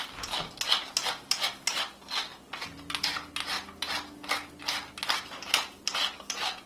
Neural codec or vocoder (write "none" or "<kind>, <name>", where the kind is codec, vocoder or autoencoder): none